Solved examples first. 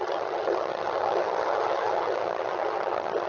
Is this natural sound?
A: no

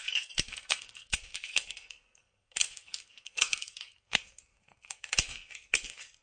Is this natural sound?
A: no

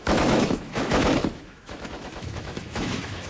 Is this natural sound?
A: no